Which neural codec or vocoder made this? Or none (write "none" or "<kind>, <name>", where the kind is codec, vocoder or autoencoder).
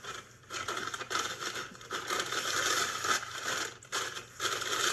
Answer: none